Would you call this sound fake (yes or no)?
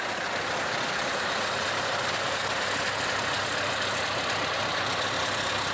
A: no